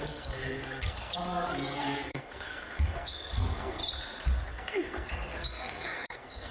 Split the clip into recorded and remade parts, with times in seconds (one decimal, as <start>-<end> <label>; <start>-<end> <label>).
0.0-3.8 remade; 3.8-4.5 recorded; 4.5-6.5 remade